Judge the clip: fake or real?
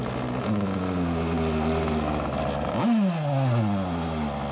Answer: real